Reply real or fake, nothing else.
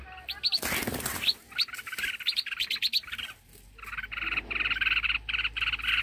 real